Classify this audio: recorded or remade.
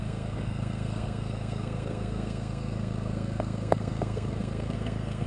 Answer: remade